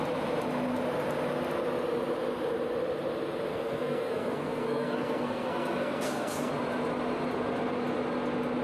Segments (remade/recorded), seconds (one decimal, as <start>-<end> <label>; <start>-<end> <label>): 0.0-3.5 recorded; 3.5-6.5 remade; 6.5-8.6 recorded